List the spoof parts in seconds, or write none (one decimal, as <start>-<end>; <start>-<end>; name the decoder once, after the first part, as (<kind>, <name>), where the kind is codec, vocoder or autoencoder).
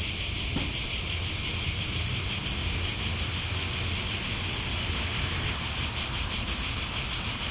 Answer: none